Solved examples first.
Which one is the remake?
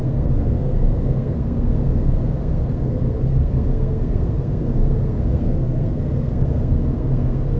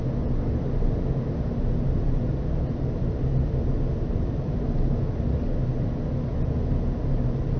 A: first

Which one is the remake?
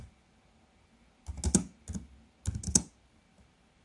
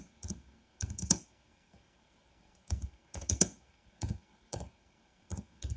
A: second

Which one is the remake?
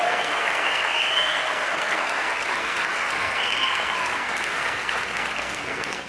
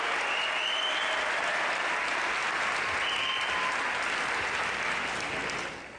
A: first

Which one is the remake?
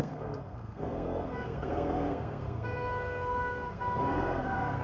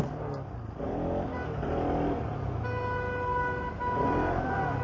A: first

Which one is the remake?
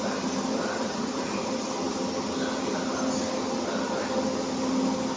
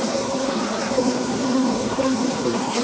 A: second